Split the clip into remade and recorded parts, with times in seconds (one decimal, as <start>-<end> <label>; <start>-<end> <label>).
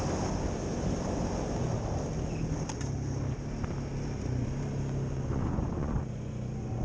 0.0-5.1 recorded; 5.1-6.8 remade